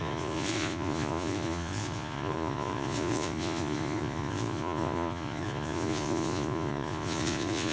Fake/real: fake